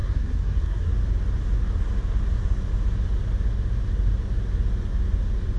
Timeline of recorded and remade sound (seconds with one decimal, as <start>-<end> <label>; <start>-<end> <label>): 0.0-0.9 remade; 0.9-5.6 recorded